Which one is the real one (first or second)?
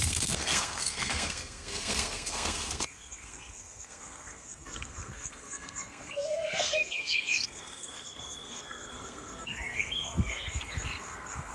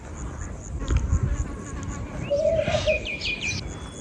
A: second